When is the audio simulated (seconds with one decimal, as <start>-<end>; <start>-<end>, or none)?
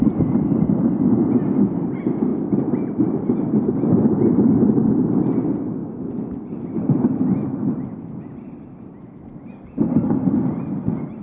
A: none